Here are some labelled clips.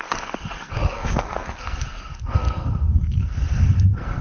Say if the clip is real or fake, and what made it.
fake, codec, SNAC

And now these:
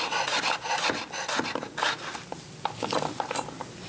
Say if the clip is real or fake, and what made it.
real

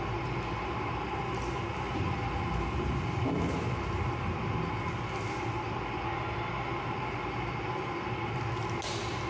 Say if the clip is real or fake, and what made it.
real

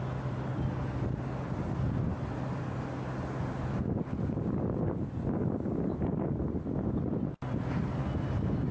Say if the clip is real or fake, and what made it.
real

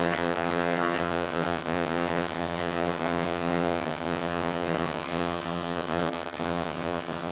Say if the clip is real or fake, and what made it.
fake, vocoder, HiFi-GAN